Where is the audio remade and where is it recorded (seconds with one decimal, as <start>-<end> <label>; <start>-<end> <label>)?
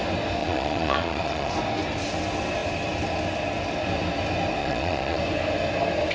0.0-0.4 recorded; 0.4-1.5 remade; 1.5-4.6 recorded; 4.6-5.2 remade; 5.2-6.1 recorded